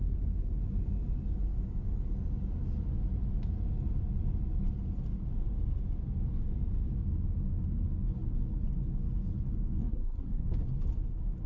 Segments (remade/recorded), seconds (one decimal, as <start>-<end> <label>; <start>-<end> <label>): 0.0-9.8 recorded; 9.8-10.4 remade; 10.4-11.5 recorded